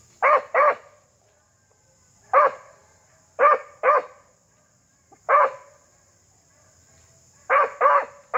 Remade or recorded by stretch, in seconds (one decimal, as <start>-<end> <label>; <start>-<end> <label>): 0.0-8.4 recorded